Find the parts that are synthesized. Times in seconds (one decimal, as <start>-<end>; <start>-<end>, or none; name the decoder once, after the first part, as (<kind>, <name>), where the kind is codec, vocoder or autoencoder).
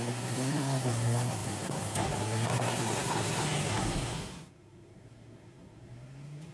0.0-6.5 (codec, SNAC)